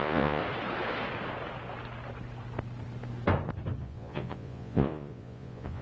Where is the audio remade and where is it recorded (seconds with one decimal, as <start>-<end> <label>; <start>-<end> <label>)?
0.0-0.4 remade; 0.4-3.8 recorded; 3.8-5.8 remade